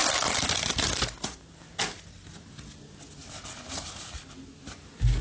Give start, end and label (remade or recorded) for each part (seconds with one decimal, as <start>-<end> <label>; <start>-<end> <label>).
0.0-5.2 recorded